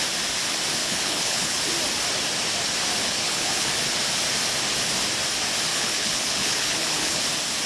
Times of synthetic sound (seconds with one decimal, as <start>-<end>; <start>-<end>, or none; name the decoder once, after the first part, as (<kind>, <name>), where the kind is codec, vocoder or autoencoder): 0.8-1.6 (codec, HILCodec); 3.0-3.7; 5.7-7.2